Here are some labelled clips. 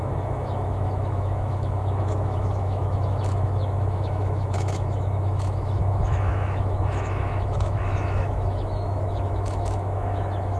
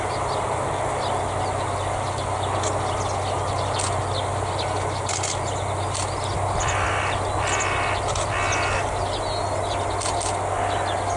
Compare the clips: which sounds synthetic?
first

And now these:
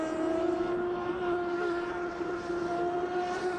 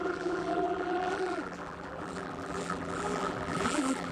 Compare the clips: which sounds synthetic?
second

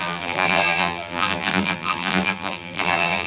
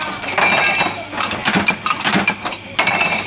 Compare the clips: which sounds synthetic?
first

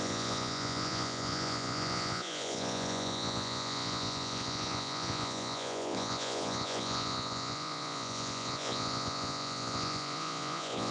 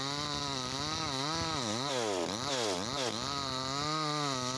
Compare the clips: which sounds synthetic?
first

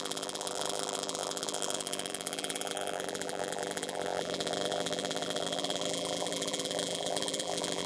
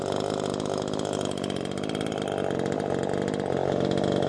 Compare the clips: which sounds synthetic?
first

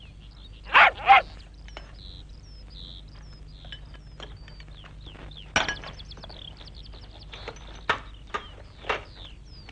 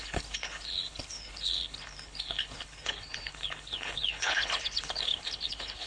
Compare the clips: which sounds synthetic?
second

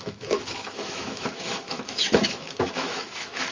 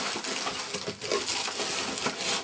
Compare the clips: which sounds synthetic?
first